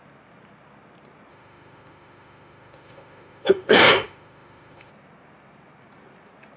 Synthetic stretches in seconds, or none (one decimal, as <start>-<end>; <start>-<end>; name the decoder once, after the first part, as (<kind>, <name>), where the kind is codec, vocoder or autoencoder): 1.3-4.9 (autoencoder, DAC-VAE)